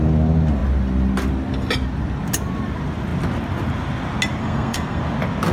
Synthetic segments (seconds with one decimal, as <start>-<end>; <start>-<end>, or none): 4.4-5.0